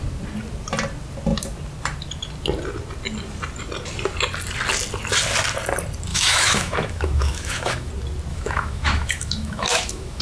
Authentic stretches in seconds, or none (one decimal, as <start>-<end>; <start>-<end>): 0.0-6.1; 7.9-8.3